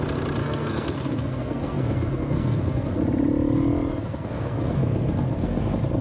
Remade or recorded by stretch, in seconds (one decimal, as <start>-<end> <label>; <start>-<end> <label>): 0.0-0.4 recorded; 0.4-3.0 remade; 3.0-3.9 recorded; 3.9-5.6 remade; 5.6-6.0 recorded